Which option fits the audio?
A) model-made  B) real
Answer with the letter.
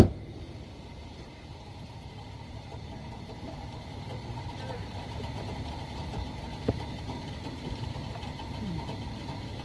A